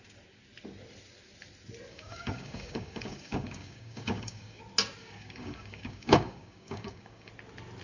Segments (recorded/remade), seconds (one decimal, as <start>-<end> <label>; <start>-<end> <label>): 0.0-1.9 recorded; 1.9-4.6 remade; 4.6-5.0 recorded; 5.0-7.3 remade; 7.3-7.8 recorded